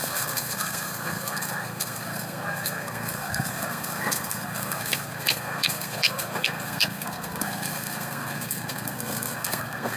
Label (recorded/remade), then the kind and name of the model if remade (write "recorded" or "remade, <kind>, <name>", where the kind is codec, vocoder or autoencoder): remade, codec, SNAC